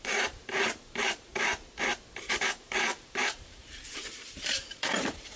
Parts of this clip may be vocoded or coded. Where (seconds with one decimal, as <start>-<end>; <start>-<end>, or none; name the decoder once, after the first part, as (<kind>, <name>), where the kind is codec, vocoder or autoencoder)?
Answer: 0.0-1.3 (vocoder, BigVGAN v2); 2.2-5.4